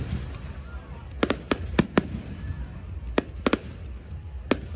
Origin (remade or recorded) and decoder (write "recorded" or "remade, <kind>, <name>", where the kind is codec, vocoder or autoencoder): recorded